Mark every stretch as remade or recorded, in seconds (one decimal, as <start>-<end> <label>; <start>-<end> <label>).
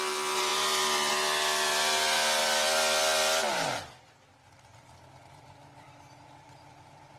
0.0-7.2 recorded